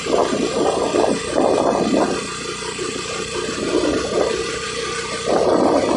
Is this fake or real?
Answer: real